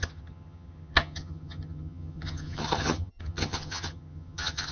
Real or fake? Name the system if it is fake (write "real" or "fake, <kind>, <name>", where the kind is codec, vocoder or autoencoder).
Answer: fake, vocoder, HiFi-GAN